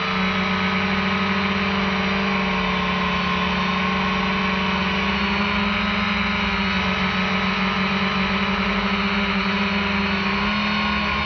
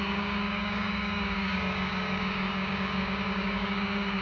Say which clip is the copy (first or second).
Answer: second